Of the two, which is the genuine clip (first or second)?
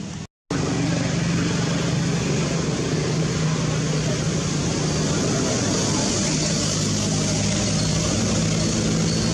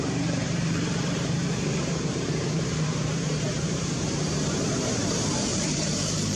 first